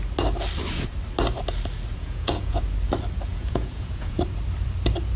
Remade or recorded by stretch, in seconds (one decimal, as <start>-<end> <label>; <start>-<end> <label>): 0.0-1.9 recorded; 1.9-2.6 remade; 2.6-3.3 recorded; 3.3-4.2 remade; 4.2-5.2 recorded